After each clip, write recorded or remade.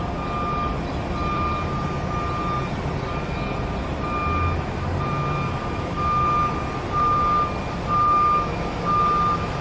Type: recorded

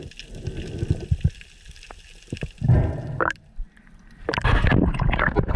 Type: recorded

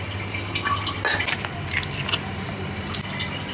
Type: recorded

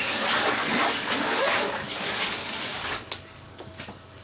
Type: remade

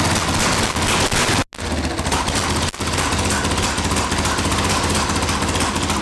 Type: recorded